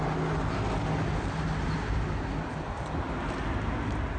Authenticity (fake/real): real